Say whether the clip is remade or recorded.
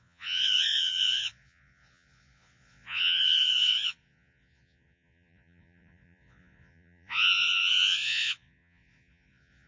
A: remade